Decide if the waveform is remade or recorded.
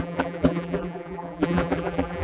remade